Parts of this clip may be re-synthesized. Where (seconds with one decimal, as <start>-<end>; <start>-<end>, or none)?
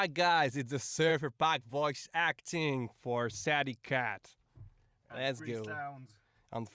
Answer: 1.1-1.7